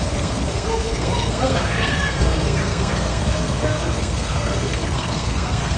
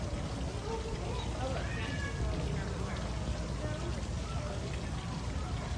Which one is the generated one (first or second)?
first